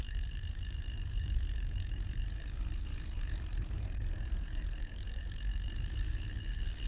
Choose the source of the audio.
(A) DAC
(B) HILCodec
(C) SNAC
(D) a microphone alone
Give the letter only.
A